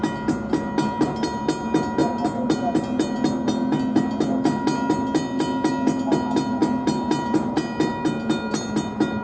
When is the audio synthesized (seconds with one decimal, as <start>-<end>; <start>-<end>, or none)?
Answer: none